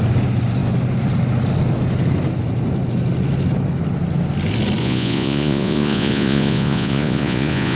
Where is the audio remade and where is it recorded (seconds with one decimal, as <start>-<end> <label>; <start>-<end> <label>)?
0.0-4.8 recorded; 4.8-7.8 remade